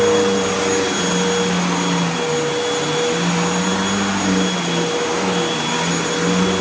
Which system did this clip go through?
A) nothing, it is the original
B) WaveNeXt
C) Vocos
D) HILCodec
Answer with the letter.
A